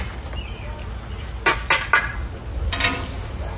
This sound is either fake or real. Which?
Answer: real